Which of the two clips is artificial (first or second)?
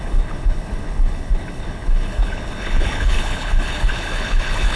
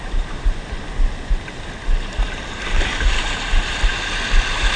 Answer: first